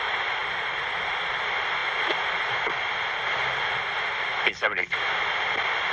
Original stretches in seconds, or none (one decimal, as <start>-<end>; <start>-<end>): 0.0-0.4; 1.0-5.9